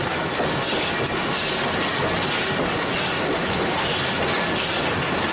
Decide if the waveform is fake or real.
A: real